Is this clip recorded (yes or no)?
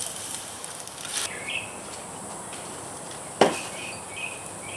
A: no